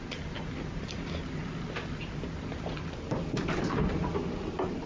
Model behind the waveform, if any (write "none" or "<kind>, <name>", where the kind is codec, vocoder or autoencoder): none